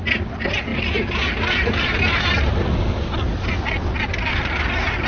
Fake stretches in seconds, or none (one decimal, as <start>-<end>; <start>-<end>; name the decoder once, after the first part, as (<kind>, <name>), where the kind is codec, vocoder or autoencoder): none